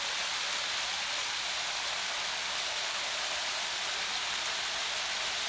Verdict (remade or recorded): recorded